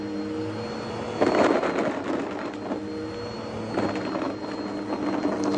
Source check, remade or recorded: recorded